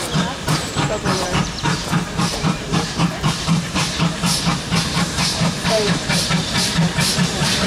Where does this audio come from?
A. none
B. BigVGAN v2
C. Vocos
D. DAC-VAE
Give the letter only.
B